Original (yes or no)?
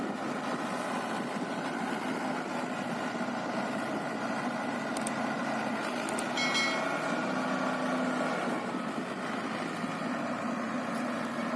yes